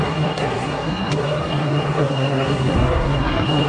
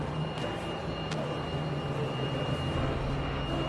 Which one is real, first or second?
second